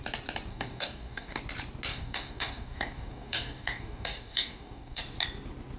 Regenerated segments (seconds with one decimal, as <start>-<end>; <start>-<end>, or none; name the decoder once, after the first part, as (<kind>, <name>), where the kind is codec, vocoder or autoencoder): 0.5-1.4 (codec, DAC); 1.9-5.0